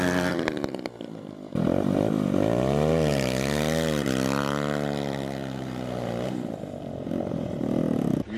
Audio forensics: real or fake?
real